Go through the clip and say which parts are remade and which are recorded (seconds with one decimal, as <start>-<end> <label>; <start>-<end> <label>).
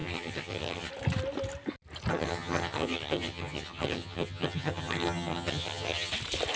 0.0-0.9 remade; 0.9-2.1 recorded; 2.1-6.1 remade; 6.1-6.6 recorded